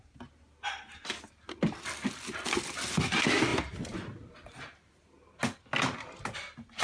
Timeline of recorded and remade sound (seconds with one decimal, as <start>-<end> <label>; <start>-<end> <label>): 0.0-6.8 recorded